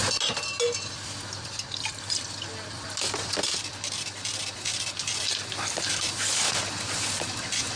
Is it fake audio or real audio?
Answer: real